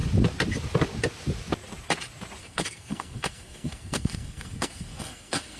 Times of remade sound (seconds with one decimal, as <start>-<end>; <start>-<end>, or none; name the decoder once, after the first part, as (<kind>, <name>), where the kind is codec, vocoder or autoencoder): 2.4-5.6 (codec, SNAC)